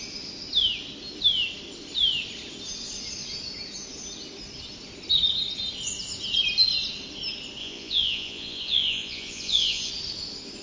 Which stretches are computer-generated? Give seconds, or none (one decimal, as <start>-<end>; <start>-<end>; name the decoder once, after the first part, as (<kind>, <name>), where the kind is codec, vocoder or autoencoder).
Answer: 7.6-9.9 (vocoder, Vocos)